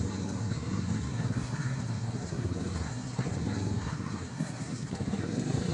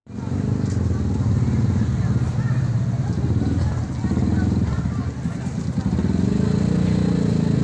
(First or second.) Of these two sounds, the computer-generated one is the first